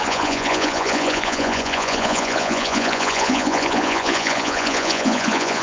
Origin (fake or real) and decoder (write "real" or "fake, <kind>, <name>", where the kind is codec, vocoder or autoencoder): fake, vocoder, Vocos